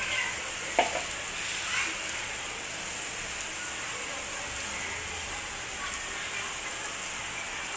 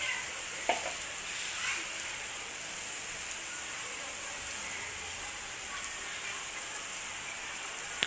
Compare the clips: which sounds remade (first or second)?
second